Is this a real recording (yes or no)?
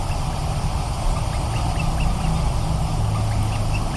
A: yes